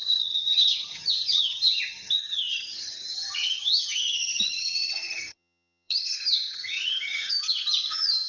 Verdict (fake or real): fake